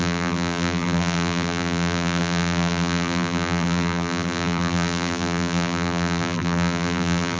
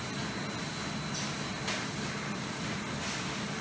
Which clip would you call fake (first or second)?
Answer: first